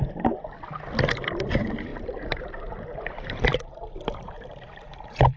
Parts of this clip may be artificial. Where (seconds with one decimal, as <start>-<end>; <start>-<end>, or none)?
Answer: 1.9-5.4